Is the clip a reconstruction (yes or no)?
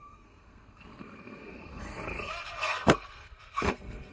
yes